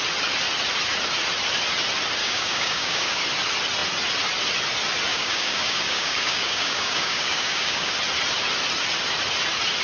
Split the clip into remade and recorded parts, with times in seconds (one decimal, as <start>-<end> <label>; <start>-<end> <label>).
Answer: 0.0-2.2 recorded; 2.2-3.2 remade; 3.2-5.1 recorded; 5.1-7.9 remade; 7.9-9.8 recorded